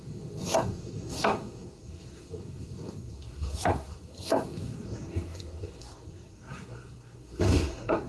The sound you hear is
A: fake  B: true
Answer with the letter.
A